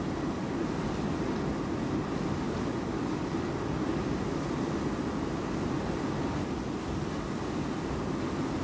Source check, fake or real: real